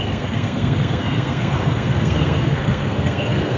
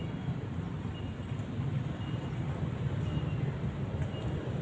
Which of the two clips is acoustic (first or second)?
second